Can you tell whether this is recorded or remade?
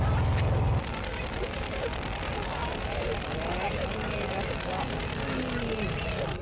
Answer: recorded